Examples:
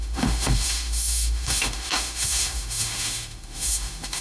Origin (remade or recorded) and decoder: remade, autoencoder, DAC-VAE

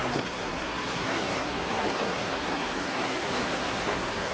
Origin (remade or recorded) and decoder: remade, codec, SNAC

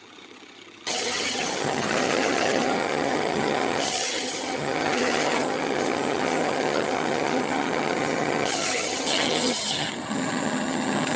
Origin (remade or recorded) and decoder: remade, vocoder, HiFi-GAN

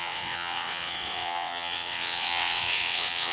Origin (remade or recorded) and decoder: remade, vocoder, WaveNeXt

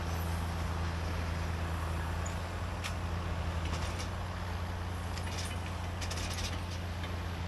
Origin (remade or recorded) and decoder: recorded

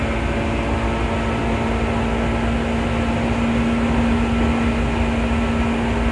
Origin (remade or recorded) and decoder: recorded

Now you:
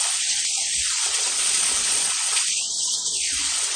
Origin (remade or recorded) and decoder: remade, vocoder, Vocos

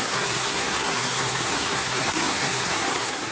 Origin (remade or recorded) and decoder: remade, codec, SNAC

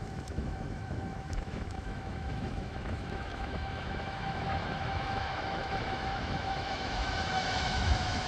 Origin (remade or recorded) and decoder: remade, autoencoder, DAC-VAE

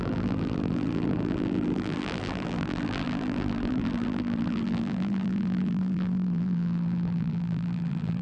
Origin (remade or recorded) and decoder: remade, vocoder, BigVGAN v2